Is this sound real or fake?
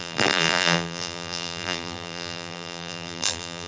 fake